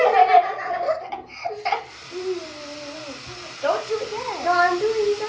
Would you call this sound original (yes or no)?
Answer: yes